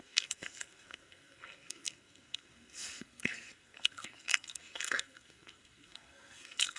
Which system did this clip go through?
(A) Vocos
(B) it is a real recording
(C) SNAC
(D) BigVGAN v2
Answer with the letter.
C